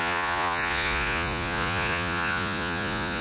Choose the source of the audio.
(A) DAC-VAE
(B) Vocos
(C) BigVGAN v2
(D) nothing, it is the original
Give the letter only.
B